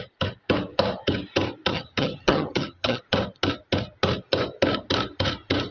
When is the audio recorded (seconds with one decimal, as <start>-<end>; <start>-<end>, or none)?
0.0-1.7; 3.0-5.7